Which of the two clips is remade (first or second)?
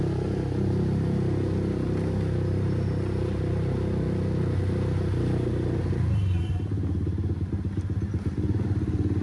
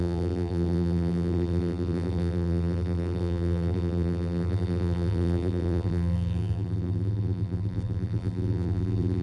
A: second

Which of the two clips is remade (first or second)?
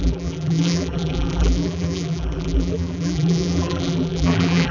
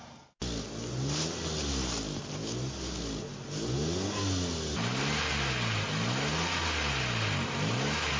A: first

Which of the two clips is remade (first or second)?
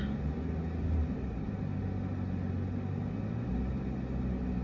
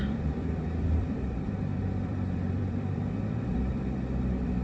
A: second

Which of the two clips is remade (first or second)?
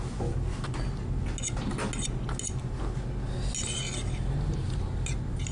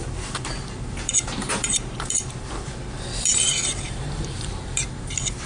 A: second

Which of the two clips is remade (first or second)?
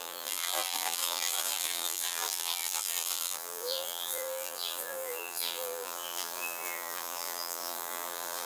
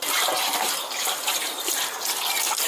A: first